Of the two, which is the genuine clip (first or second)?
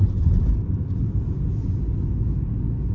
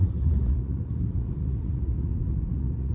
first